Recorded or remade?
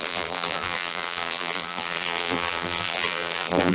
remade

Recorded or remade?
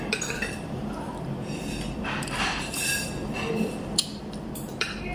remade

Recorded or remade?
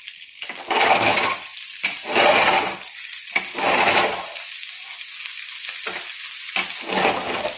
recorded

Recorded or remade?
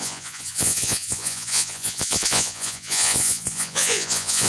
remade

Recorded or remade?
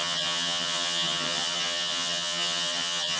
remade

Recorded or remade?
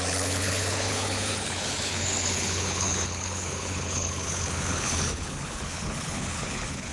remade